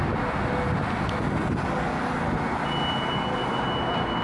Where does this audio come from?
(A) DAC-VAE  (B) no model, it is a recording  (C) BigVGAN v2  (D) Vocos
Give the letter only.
B